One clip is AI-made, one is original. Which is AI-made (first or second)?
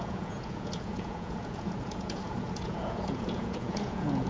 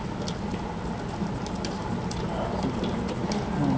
first